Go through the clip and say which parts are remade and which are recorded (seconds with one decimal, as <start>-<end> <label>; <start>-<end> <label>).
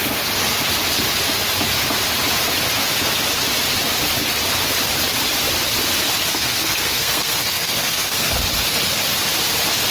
0.0-6.3 recorded; 6.3-8.3 remade; 8.3-9.9 recorded